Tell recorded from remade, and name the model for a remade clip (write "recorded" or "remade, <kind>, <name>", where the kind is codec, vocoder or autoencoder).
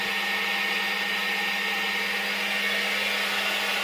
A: recorded